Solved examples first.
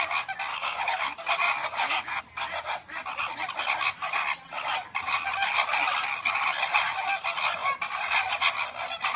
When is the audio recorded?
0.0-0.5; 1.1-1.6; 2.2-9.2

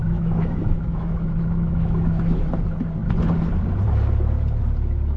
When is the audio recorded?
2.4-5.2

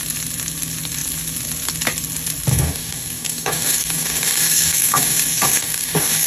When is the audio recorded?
0.0-2.5

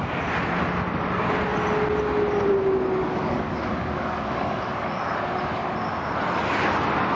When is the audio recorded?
0.0-3.0; 5.0-7.1

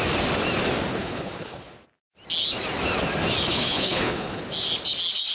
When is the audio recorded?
0.0-0.9; 1.7-3.5; 4.4-5.3

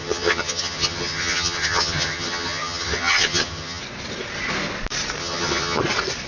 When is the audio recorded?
3.8-5.2; 5.8-6.3

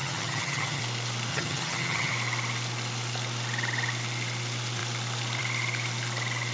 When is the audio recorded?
0.8-1.3; 2.1-6.5